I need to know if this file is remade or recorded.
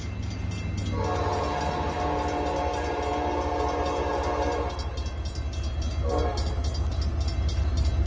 recorded